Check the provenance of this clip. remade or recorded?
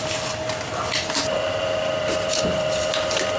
recorded